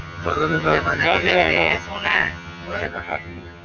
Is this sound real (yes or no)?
no